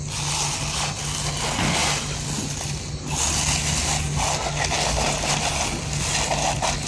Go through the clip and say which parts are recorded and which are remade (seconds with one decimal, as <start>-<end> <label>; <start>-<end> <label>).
0.0-6.9 recorded